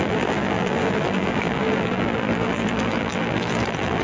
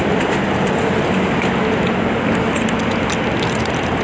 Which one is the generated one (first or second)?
first